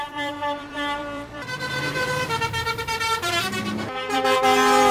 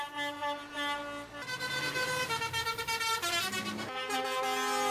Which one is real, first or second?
second